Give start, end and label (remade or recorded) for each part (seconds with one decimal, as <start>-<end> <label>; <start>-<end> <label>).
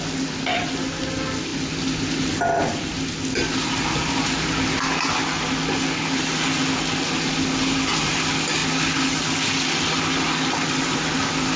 0.0-11.6 recorded